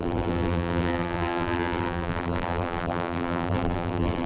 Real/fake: fake